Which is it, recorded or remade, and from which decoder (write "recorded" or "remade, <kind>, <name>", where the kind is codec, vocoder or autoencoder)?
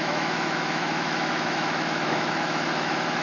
remade, autoencoder, DAC-VAE